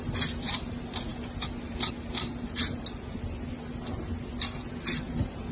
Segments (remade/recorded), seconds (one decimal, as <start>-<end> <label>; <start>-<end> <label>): 0.0-5.5 recorded